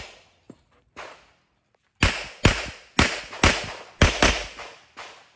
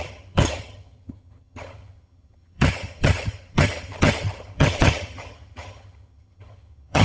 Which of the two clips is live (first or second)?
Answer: first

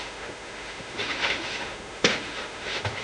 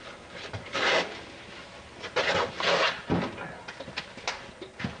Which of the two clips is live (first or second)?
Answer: second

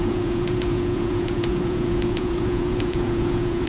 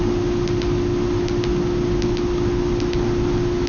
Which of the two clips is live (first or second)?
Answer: second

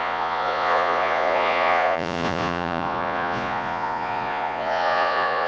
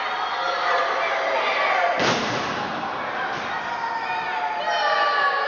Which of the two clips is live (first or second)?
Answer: second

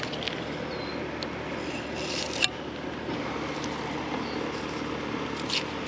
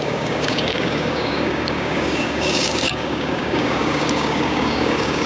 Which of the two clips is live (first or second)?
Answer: first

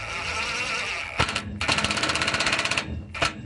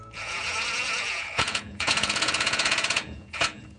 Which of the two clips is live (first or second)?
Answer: first